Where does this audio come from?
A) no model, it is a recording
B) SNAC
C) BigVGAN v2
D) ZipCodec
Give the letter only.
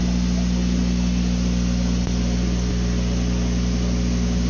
A